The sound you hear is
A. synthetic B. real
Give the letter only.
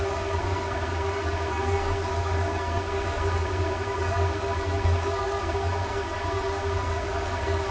A